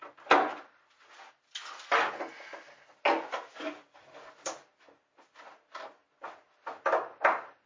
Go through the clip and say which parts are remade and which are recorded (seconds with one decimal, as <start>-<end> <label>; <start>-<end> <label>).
0.0-7.7 recorded